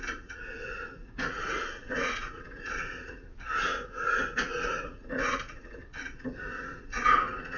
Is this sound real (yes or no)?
no